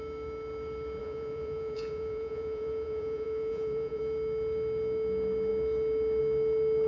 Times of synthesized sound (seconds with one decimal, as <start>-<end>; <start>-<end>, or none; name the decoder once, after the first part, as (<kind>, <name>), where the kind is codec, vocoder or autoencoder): 1.0-4.0 (vocoder, Vocos)